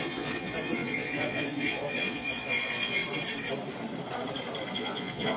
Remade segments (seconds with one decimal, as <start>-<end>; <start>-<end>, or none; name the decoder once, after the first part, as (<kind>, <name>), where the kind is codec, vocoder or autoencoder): 0.0-3.0 (vocoder, Vocos); 4.7-5.4